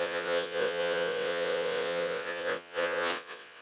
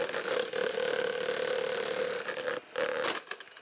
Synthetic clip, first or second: first